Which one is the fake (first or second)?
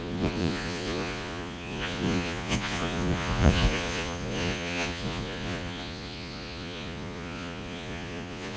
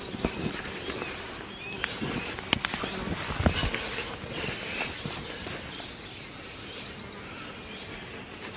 first